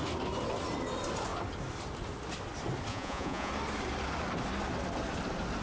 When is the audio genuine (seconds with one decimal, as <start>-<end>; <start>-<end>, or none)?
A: 0.0-2.9; 3.5-5.6